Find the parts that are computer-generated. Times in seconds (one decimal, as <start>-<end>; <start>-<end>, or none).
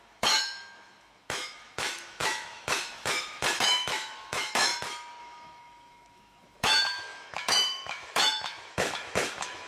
0.0-4.7; 5.2-9.7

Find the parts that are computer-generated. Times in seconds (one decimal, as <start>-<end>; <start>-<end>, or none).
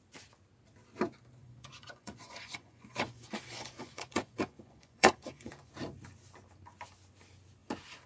1.4-5.7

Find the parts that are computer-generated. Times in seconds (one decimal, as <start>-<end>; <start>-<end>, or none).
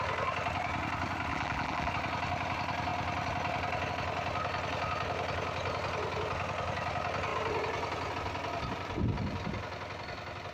1.3-1.9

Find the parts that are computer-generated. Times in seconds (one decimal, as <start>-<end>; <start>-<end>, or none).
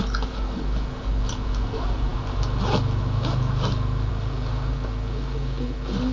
none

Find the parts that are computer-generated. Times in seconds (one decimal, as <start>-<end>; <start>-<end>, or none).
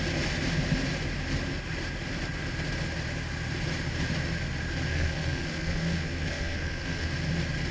4.9-7.1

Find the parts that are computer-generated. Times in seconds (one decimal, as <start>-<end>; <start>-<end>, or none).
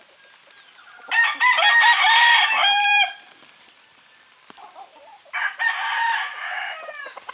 2.6-5.8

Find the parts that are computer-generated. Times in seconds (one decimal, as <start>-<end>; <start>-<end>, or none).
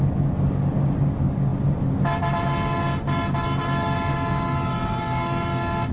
none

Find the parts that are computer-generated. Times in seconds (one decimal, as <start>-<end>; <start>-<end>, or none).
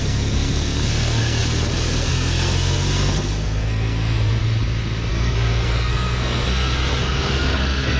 0.0-4.4; 5.1-8.0